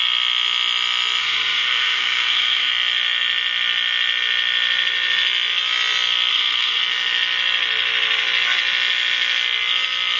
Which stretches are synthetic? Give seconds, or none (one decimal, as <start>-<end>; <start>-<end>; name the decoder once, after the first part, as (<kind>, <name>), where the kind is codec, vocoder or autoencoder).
1.2-2.7 (codec, SNAC); 6.3-6.8